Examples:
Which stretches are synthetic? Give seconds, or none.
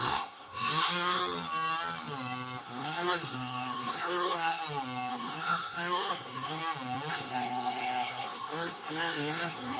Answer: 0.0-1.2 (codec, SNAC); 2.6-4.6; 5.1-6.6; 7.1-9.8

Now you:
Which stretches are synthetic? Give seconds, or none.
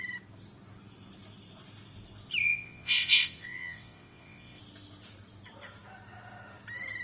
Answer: 2.4-4.6 (vocoder, WaveNeXt)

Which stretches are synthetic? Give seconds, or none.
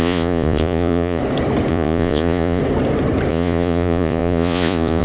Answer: 0.0-1.2 (vocoder, Vocos); 1.7-2.6; 3.3-5.0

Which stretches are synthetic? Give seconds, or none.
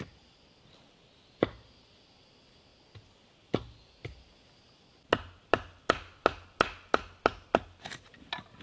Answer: none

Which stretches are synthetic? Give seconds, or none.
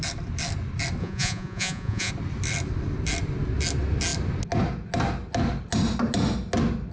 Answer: 1.0-2.1 (vocoder, Vocos)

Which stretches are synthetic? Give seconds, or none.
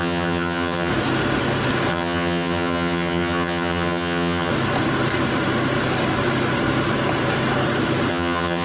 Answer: 0.0-0.9 (vocoder, HiFi-GAN); 1.9-4.5; 8.1-8.6